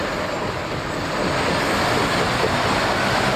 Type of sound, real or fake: real